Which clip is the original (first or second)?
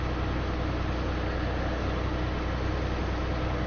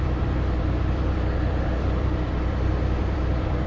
first